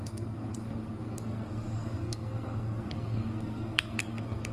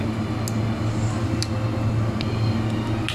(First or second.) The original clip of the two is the second